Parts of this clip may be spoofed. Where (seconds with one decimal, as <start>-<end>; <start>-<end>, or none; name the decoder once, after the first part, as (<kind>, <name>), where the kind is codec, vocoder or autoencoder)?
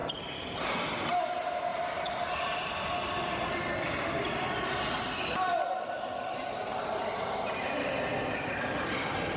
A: 1.7-3.3 (vocoder, BigVGAN v2); 6.7-7.9